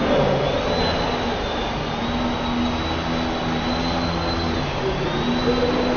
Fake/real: real